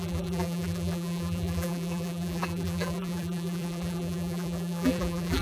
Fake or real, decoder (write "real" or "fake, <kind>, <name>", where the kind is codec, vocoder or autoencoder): fake, vocoder, BigVGAN v2